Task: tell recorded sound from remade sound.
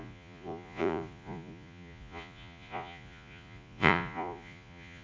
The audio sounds remade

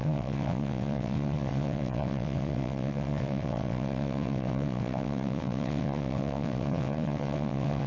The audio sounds remade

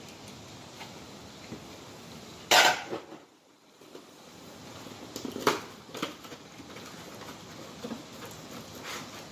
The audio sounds recorded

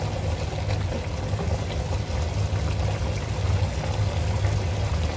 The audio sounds recorded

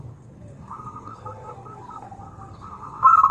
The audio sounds remade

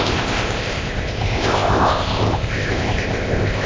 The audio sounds remade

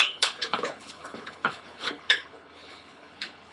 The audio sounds remade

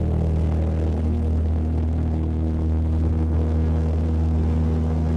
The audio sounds remade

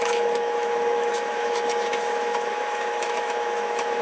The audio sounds remade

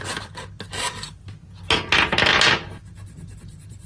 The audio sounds recorded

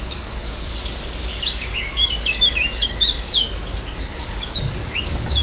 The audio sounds remade